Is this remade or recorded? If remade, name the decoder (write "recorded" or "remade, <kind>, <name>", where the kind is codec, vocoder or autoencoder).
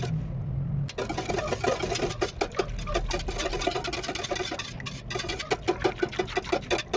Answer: recorded